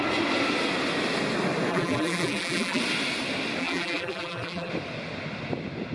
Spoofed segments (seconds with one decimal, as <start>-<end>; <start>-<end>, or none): 1.7-2.8; 3.6-4.7